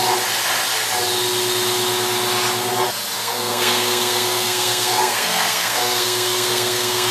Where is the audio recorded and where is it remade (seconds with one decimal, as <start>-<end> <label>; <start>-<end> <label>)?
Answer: 0.0-3.2 recorded; 3.2-7.1 remade